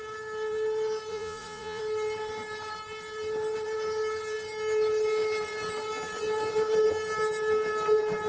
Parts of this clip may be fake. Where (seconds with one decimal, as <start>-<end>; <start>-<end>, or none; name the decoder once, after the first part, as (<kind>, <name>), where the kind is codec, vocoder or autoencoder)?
1.1-1.8 (vocoder, Vocos)